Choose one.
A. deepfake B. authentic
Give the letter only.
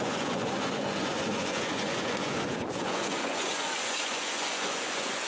A